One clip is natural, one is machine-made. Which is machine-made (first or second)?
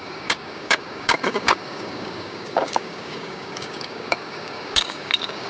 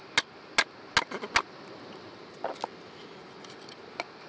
first